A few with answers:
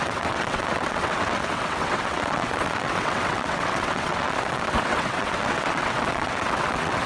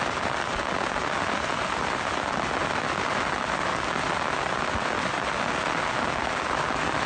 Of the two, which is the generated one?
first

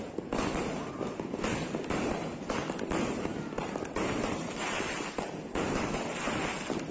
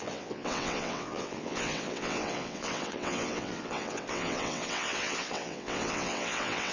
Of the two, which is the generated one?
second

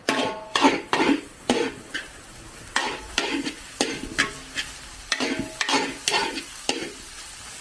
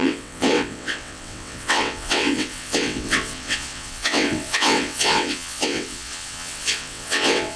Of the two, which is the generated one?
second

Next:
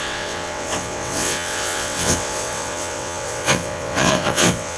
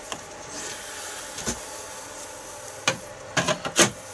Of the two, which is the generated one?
first